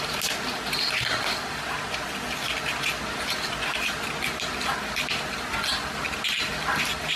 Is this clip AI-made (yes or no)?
no